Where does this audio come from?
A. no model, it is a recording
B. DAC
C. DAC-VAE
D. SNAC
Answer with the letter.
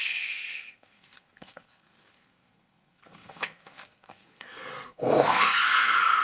D